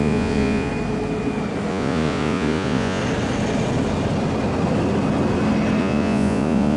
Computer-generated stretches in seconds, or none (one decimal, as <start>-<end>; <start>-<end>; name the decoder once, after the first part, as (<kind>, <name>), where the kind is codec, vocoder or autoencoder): 0.0-0.7 (vocoder, Vocos); 1.7-3.0; 5.8-6.8